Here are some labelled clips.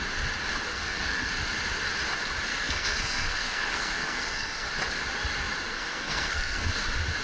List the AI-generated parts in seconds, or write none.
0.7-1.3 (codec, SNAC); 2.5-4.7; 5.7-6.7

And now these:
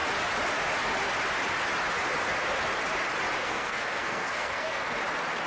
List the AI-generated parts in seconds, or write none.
3.4-5.0 (codec, SNAC)

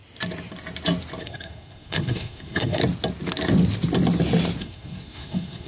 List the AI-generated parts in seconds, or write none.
1.2-2.8 (codec, SNAC); 4.6-5.7

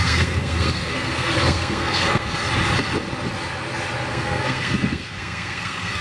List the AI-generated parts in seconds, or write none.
0.0-2.4 (codec, SNAC); 4.1-6.0

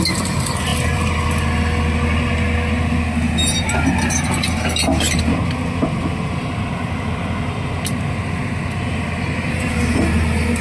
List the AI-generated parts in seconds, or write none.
none

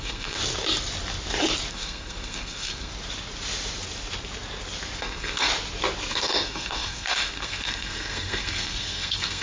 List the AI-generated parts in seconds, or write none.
0.0-0.4 (codec, SNAC); 1.7-2.9; 5.0-5.5; 6.1-9.4

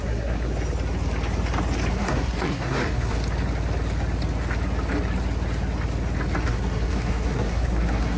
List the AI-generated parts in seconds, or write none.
0.0-0.5 (codec, SNAC); 1.9-3.2; 6.4-8.2

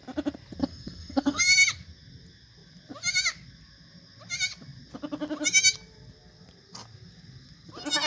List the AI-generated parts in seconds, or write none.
0.6-1.4 (codec, SNAC)